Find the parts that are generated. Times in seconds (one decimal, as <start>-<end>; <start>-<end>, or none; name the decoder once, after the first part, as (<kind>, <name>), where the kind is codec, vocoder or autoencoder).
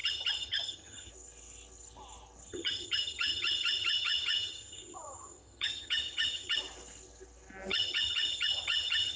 0.0-1.1 (vocoder, HiFi-GAN); 2.5-6.6; 7.7-9.2